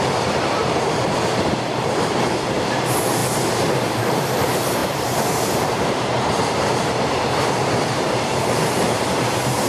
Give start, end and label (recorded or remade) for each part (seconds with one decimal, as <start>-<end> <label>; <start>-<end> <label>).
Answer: 0.0-3.2 remade; 3.2-4.0 recorded; 4.0-9.7 remade